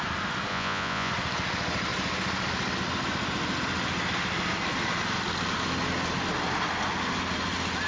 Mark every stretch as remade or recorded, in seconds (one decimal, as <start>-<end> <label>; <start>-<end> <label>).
0.0-0.5 recorded; 0.5-1.1 remade; 1.1-7.9 recorded